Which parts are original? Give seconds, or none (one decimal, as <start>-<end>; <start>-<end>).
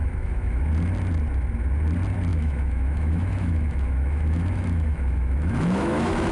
0.6-2.3